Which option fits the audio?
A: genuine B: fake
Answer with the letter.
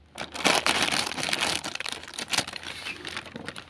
A